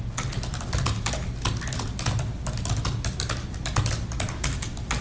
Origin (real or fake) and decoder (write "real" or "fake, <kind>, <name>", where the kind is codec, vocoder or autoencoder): real